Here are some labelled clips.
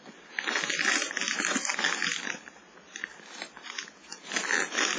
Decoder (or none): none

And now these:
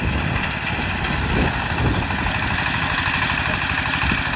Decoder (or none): none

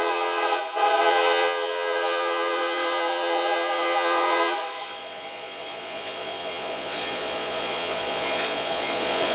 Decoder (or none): vocoder, Vocos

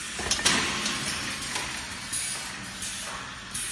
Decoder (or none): none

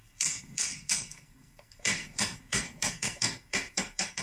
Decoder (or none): codec, SNAC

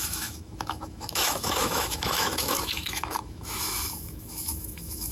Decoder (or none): autoencoder, DAC-VAE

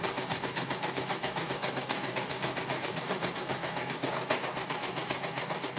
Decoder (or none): codec, DAC